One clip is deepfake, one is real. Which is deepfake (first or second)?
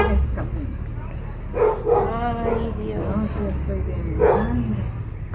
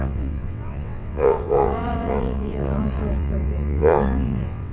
second